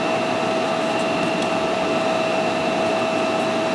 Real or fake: real